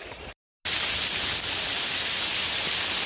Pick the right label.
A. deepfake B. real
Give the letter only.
B